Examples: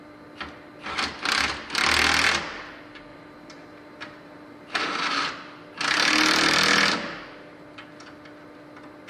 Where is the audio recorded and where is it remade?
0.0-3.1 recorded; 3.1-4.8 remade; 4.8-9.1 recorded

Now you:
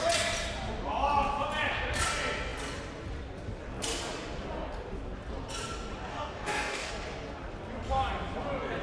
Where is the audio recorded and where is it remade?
0.0-6.1 recorded; 6.1-6.9 remade; 6.9-8.8 recorded

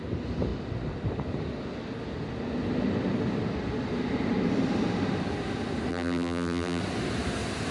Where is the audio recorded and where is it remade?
0.0-5.9 recorded; 5.9-6.8 remade; 6.8-7.7 recorded

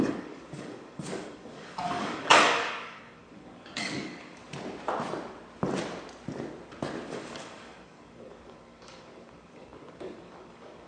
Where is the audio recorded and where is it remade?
0.0-4.4 remade; 4.4-7.1 recorded; 7.1-10.9 remade

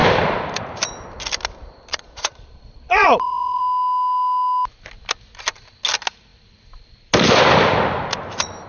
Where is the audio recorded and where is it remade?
0.0-1.9 recorded; 1.9-3.6 remade; 3.6-8.7 recorded

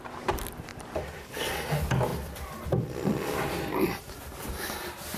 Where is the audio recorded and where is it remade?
0.0-5.2 remade

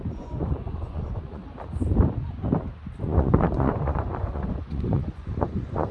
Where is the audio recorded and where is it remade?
0.0-1.4 remade; 1.4-3.0 recorded; 3.0-5.9 remade

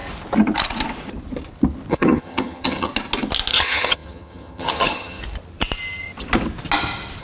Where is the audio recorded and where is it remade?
0.0-1.9 recorded; 1.9-2.9 remade; 2.9-3.5 recorded; 3.5-5.2 remade; 5.2-7.2 recorded